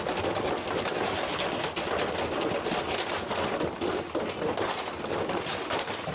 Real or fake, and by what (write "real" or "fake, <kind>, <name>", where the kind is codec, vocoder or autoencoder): real